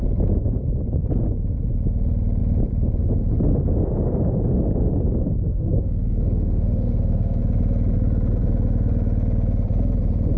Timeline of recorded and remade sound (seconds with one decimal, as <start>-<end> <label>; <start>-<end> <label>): 0.0-5.5 recorded; 5.5-7.4 remade; 7.4-10.4 recorded